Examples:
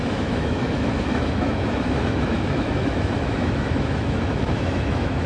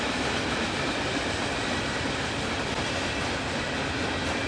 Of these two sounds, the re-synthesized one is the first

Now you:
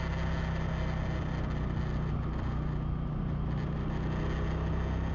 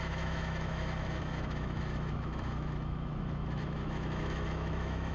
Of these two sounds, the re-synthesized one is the second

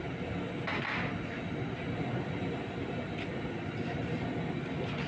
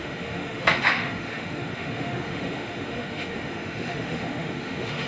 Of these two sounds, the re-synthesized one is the second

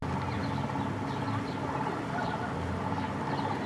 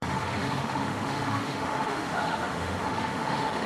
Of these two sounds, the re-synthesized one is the second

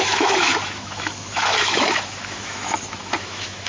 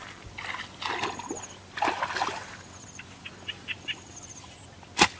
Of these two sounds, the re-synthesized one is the first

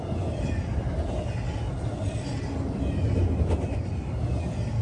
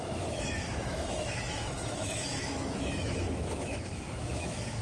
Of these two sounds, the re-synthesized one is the second